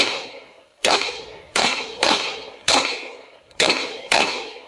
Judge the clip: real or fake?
fake